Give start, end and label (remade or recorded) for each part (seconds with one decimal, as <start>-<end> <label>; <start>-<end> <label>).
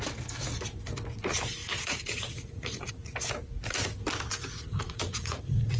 0.0-1.6 recorded; 1.6-2.9 remade; 2.9-4.4 recorded; 4.4-5.8 remade